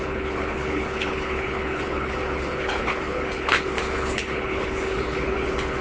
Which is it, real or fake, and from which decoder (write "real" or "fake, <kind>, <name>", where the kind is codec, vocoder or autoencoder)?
fake, codec, HILCodec